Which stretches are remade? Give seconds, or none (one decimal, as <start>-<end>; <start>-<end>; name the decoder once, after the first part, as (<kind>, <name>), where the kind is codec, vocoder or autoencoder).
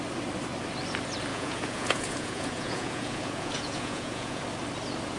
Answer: 1.3-4.4 (vocoder, Vocos)